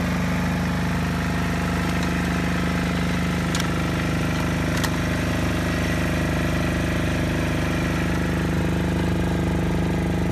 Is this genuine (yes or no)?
yes